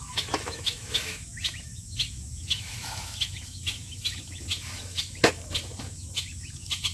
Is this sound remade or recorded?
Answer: remade